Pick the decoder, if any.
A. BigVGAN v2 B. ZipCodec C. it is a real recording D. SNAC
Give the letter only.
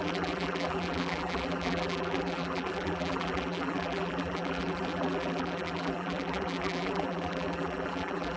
A